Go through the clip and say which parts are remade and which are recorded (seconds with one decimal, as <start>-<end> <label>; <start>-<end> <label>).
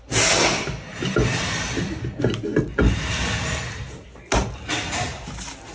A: 0.0-5.7 recorded